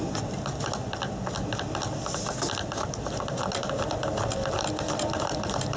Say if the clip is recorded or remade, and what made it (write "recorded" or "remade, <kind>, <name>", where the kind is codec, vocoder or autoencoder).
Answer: recorded